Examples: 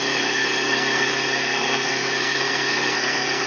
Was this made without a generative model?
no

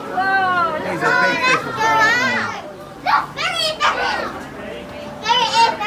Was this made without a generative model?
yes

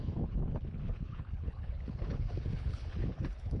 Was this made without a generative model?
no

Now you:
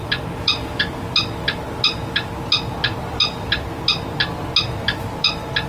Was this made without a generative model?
yes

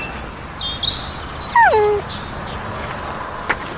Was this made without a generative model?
yes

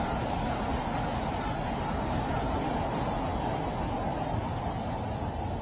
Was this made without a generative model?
yes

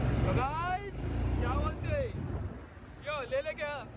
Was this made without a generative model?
yes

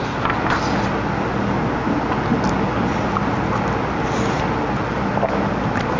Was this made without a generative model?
yes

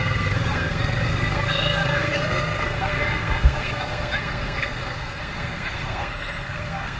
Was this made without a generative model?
no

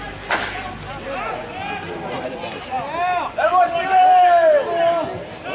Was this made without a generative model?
yes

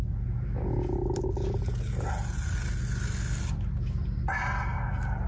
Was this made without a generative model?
yes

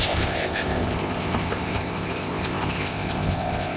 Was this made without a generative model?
no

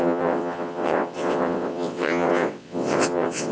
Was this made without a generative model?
no